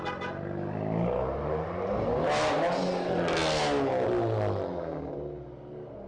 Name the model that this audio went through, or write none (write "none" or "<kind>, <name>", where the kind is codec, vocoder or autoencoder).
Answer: none